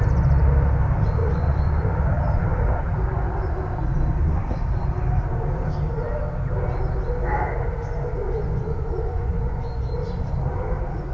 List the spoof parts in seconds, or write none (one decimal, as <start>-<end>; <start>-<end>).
1.2-1.8; 8.2-9.8